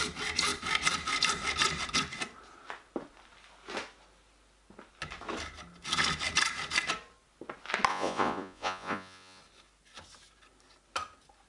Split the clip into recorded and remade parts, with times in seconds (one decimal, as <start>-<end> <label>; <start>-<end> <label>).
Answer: 0.0-7.9 recorded; 7.9-9.4 remade; 9.4-11.5 recorded

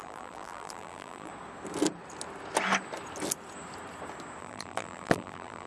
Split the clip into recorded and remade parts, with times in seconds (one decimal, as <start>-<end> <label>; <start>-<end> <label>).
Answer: 0.0-1.3 remade; 1.3-4.4 recorded; 4.4-5.7 remade

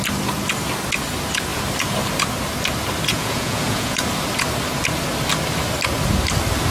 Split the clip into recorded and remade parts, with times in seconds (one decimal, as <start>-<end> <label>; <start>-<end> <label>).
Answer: 0.0-3.1 recorded; 3.1-4.0 remade; 4.0-6.7 recorded

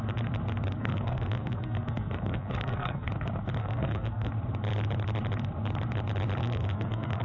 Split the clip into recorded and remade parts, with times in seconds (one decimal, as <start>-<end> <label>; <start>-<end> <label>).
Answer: 0.0-0.8 recorded; 0.8-3.1 remade; 3.1-3.6 recorded; 3.6-4.3 remade; 4.3-6.4 recorded; 6.4-7.2 remade

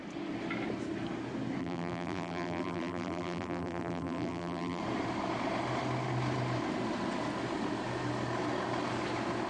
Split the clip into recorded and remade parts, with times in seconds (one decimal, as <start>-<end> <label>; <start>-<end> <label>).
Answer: 0.0-1.6 recorded; 1.6-4.8 remade; 4.8-9.5 recorded

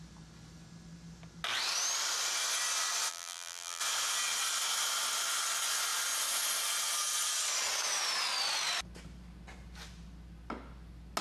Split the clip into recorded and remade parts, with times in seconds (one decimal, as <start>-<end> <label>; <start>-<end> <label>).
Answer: 0.0-3.1 recorded; 3.1-3.8 remade; 3.8-11.2 recorded